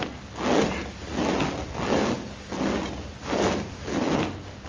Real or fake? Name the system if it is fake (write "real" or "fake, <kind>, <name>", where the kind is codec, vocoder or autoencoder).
real